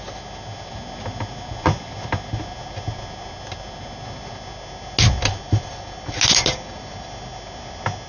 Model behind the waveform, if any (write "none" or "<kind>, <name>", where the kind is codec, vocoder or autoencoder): none